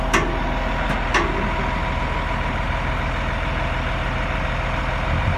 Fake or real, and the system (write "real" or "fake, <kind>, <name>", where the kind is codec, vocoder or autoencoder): real